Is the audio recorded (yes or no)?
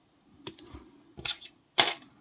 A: yes